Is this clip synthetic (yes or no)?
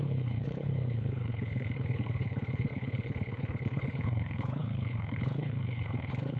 yes